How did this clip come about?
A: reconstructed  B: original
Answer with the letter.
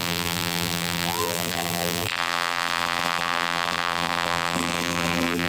A